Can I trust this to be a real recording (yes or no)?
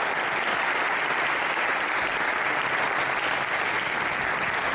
yes